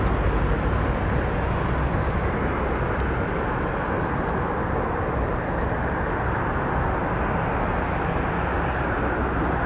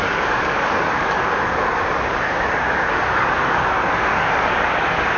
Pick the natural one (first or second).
first